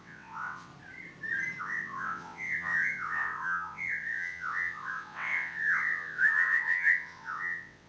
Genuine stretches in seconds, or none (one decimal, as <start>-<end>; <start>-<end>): 0.7-1.6